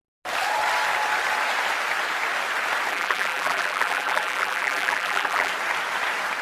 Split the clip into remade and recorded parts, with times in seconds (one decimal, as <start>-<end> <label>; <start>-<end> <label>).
0.0-2.9 recorded; 2.9-5.5 remade; 5.5-6.4 recorded